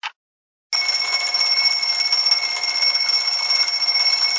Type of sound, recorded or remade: recorded